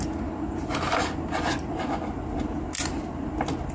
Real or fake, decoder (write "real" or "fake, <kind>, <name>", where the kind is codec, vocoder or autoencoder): real